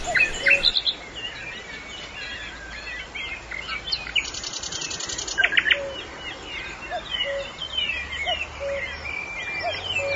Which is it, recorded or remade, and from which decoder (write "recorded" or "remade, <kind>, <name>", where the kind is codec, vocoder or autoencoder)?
recorded